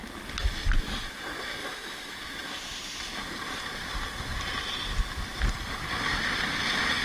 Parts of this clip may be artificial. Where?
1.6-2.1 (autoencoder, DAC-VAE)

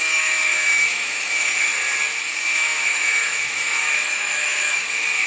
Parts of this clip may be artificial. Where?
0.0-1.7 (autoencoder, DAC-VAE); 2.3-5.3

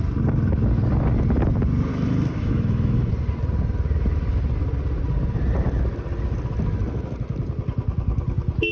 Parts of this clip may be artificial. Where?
1.9-3.1 (autoencoder, DAC-VAE)

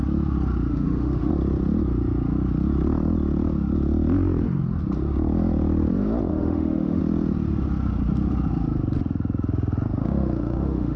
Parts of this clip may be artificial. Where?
0.7-1.3 (autoencoder, DAC-VAE); 6.3-7.0; 10.0-11.0

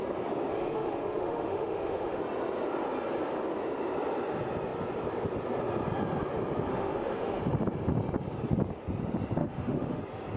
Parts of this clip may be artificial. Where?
0.5-2.2 (autoencoder, DAC-VAE); 6.7-7.4; 9.4-10.0

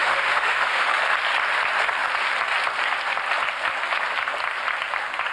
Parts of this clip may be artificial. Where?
0.0-1.0 (autoencoder, DAC-VAE)

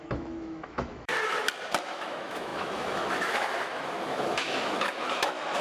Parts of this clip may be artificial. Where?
0.0-1.1 (autoencoder, DAC-VAE); 1.8-5.6